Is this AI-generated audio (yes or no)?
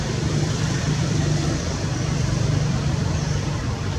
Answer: yes